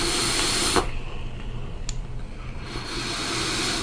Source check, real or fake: real